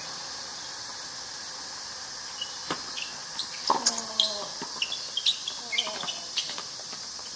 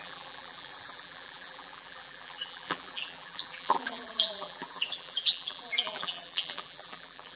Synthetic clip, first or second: second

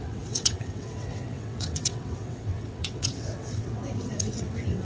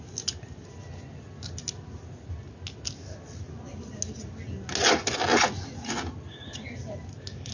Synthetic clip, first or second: first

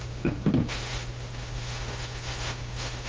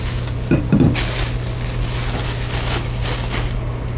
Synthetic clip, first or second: first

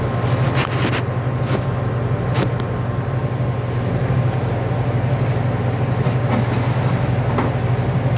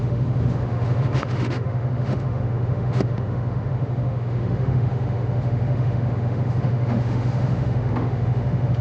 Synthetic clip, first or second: second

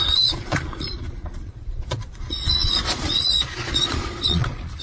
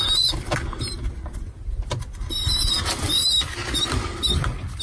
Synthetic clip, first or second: first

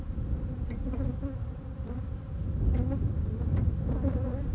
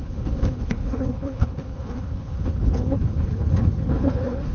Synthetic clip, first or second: second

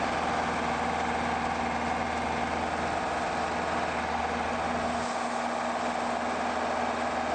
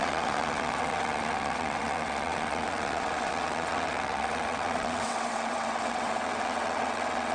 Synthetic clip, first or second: second